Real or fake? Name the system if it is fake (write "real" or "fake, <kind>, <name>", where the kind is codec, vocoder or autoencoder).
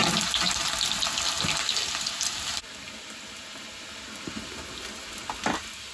real